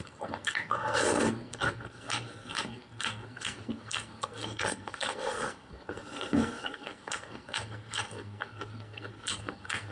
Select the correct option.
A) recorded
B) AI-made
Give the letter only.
B